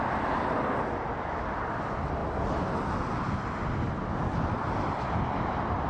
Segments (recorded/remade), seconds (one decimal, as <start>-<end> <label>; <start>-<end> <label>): 0.0-5.9 recorded